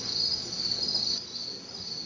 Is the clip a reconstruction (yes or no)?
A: no